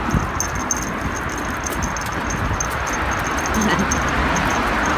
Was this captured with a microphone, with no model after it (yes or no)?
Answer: yes